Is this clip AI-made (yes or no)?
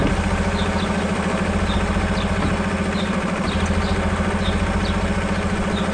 no